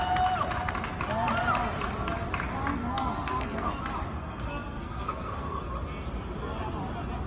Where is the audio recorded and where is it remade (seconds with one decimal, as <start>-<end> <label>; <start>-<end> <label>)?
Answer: 0.0-2.7 recorded; 2.7-3.7 remade; 3.7-4.2 recorded; 4.2-5.7 remade; 5.7-7.3 recorded